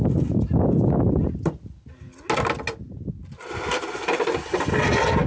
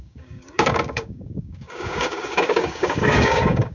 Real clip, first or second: first